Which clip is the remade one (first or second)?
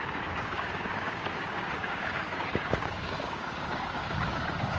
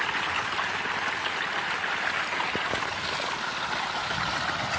first